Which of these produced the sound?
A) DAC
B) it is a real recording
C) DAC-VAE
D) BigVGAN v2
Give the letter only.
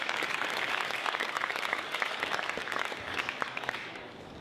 A